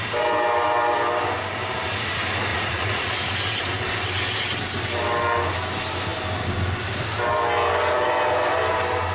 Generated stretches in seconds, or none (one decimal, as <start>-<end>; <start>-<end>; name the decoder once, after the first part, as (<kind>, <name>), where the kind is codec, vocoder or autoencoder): 2.5-3.1 (vocoder, Vocos)